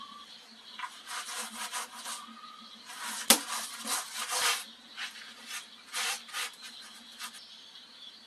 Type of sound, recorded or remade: recorded